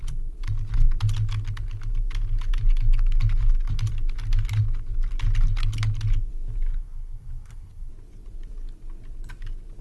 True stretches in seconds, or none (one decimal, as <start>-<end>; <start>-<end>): 0.0-6.7; 7.9-9.8